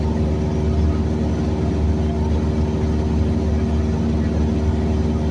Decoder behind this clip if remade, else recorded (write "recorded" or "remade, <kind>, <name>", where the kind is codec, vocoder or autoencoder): recorded